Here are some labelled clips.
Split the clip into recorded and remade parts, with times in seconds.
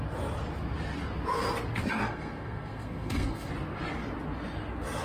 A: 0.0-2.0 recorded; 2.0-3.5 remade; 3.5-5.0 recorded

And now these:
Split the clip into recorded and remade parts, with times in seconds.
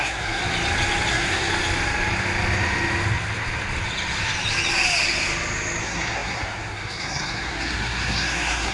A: 0.0-0.4 remade; 0.4-1.1 recorded; 1.1-1.5 remade; 1.5-5.8 recorded; 5.8-8.7 remade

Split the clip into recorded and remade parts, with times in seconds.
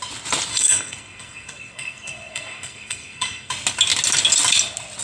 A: 0.0-0.5 recorded; 0.5-3.5 remade; 3.5-5.0 recorded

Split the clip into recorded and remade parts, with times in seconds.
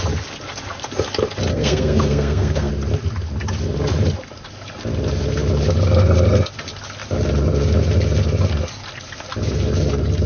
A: 0.0-1.5 recorded; 1.5-2.7 remade; 2.7-10.3 recorded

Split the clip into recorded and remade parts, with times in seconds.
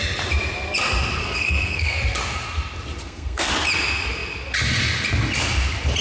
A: 0.0-1.2 recorded; 1.2-2.0 remade; 2.0-3.0 recorded; 3.0-3.5 remade; 3.5-6.0 recorded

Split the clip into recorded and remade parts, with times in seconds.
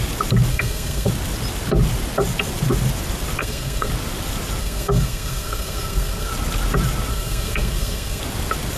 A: 0.0-0.5 recorded; 0.5-1.1 remade; 1.1-3.4 recorded; 3.4-3.9 remade; 3.9-4.6 recorded; 4.6-6.3 remade; 6.3-7.1 recorded; 7.1-8.2 remade; 8.2-8.8 recorded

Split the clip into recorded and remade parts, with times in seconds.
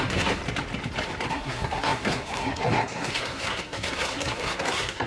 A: 0.0-0.4 remade; 0.4-1.3 recorded; 1.3-5.1 remade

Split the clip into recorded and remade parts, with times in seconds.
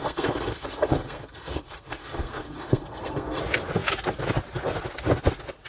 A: 0.0-3.4 remade; 3.4-5.7 recorded